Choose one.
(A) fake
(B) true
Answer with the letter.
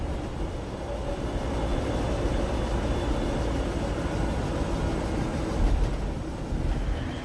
B